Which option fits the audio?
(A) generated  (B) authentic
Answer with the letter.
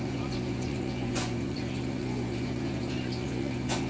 A